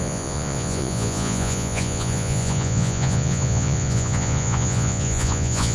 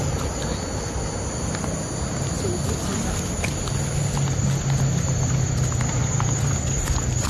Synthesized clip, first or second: first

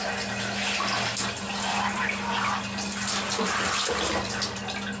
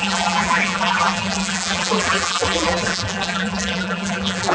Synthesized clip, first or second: second